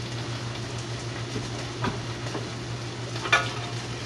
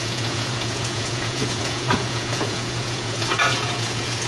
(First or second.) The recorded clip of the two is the first